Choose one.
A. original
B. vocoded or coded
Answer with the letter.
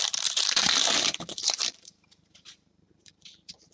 B